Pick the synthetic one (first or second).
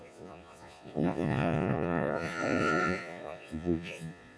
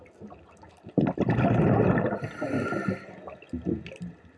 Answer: first